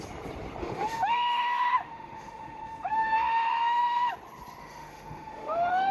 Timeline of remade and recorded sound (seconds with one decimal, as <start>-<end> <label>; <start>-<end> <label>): 0.0-0.6 recorded; 0.6-4.1 remade; 4.1-4.6 recorded; 4.6-5.9 remade